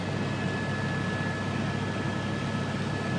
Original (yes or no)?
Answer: yes